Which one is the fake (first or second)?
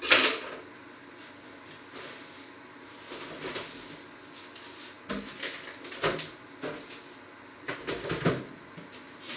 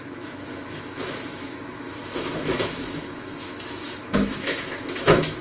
second